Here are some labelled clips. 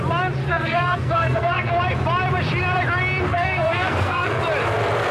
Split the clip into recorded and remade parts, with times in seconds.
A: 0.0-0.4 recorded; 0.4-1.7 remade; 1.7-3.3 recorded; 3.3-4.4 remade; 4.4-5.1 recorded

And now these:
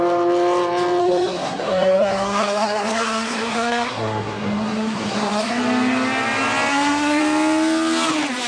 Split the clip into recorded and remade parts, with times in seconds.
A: 0.0-1.0 recorded; 1.0-5.6 remade; 5.6-6.7 recorded; 6.7-7.2 remade; 7.2-8.5 recorded

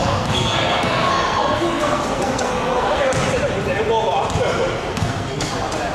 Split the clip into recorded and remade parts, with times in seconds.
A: 0.0-3.1 remade; 3.1-4.9 recorded; 4.9-5.5 remade; 5.5-5.9 recorded

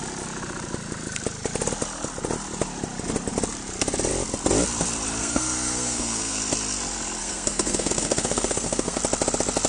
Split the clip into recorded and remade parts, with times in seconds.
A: 0.0-5.2 recorded; 5.2-6.4 remade; 6.4-7.2 recorded; 7.2-9.0 remade; 9.0-9.7 recorded

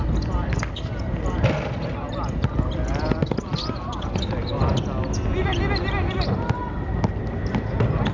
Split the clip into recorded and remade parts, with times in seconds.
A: 0.0-8.1 recorded